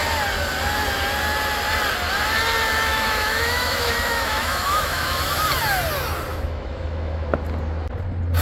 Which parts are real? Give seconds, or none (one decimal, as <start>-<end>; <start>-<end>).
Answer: 0.0-2.9; 5.2-6.3; 7.3-8.4